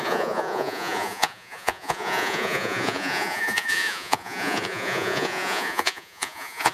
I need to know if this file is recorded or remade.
remade